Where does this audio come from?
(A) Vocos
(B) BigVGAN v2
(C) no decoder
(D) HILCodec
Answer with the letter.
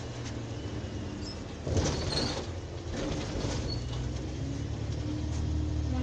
C